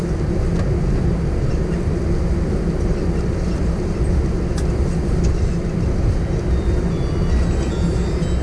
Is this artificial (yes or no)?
no